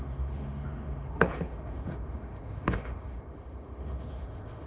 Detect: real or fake fake